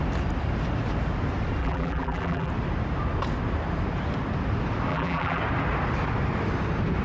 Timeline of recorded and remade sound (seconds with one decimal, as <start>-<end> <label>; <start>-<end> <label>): 0.0-1.6 recorded; 1.6-2.5 remade; 2.5-4.9 recorded; 4.9-5.4 remade; 5.4-7.0 recorded